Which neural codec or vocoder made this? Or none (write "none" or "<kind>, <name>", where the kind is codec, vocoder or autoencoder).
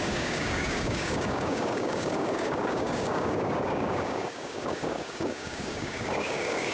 codec, DAC